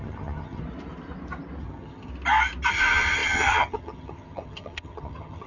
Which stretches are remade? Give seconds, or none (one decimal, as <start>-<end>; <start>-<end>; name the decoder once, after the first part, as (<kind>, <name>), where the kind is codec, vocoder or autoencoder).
0.0-0.6 (vocoder, HiFi-GAN); 1.6-2.1; 2.7-5.5